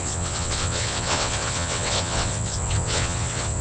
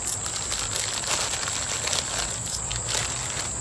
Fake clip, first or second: first